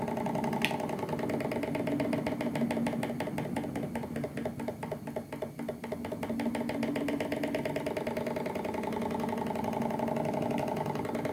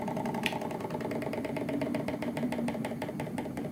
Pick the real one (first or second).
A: first